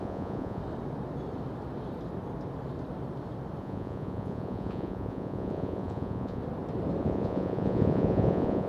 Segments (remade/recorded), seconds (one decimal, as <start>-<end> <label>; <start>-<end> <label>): 0.0-0.6 remade; 0.6-3.6 recorded; 3.6-6.4 remade; 6.4-7.0 recorded; 7.0-8.7 remade